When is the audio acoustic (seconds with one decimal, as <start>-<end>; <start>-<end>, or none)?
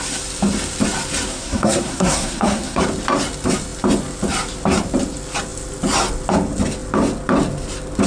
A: 0.0-1.3; 2.8-8.1